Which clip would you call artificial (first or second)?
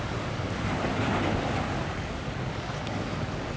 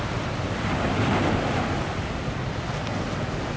first